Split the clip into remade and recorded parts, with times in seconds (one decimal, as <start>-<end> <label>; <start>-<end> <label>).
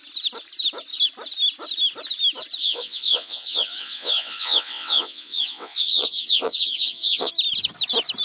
0.0-2.6 recorded; 2.6-7.3 remade; 7.3-8.2 recorded